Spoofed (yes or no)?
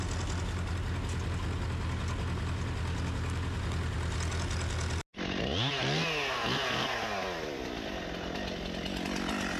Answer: no